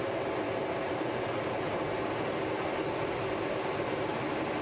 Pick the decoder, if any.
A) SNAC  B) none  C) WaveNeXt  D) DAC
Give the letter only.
B